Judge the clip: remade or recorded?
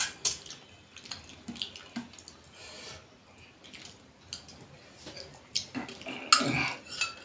recorded